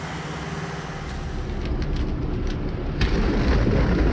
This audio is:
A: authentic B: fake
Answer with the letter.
A